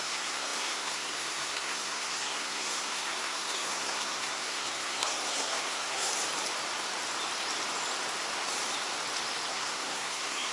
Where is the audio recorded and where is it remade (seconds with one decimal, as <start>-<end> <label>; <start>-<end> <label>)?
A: 0.0-6.1 remade; 6.1-9.5 recorded; 9.5-10.5 remade